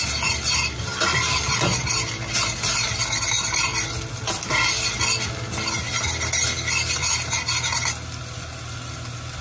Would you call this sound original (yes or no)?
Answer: yes